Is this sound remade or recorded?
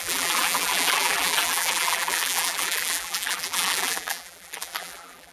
remade